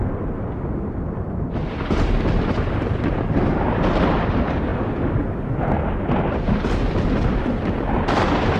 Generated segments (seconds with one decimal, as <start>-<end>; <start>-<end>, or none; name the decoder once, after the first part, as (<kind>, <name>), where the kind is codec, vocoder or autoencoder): none